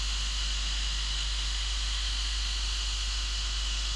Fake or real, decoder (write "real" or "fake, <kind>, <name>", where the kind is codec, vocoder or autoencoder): fake, autoencoder, DAC-VAE